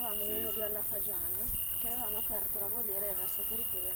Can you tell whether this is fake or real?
fake